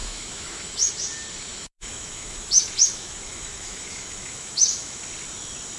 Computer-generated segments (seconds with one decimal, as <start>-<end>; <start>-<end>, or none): 0.0-0.9; 1.5-5.0

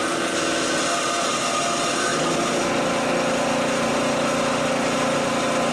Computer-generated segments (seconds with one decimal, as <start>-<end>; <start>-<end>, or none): none